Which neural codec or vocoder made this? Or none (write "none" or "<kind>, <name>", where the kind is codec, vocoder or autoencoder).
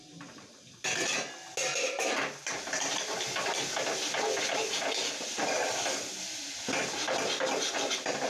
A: none